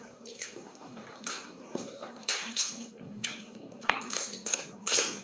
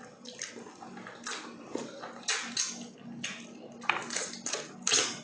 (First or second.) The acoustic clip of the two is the second